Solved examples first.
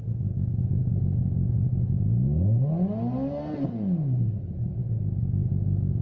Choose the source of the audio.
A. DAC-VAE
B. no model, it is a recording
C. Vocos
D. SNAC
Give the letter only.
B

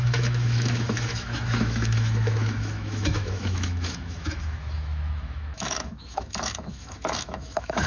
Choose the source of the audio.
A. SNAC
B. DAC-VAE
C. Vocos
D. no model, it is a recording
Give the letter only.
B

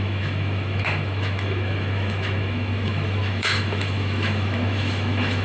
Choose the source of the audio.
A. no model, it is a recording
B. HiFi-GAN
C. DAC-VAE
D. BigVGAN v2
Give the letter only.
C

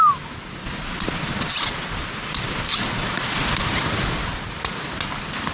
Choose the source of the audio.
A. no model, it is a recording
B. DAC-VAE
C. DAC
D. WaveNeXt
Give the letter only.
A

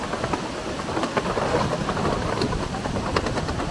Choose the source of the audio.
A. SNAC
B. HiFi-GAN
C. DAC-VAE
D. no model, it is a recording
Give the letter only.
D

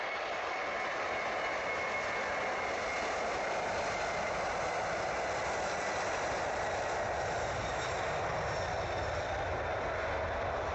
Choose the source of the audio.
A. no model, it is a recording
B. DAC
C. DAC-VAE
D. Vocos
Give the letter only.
A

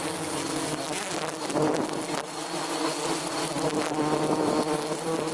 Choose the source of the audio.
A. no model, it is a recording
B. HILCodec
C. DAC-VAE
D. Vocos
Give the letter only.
A